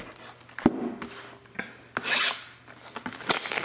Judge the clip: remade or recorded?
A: recorded